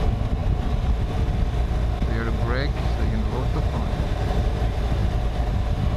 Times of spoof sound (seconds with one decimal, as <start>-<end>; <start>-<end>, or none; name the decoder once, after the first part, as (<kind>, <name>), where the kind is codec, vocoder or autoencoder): 3.5-4.5 (vocoder, BigVGAN v2); 5.0-5.6